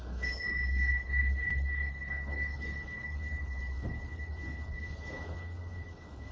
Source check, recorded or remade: remade